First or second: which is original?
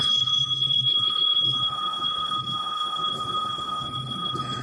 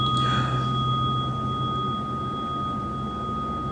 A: second